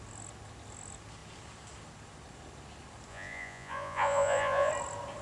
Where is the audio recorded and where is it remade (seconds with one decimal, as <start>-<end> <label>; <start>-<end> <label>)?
0.0-3.1 recorded; 3.1-4.7 remade; 4.7-5.2 recorded